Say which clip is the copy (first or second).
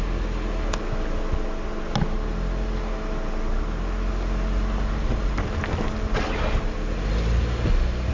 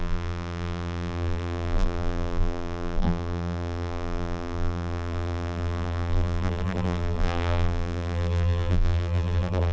second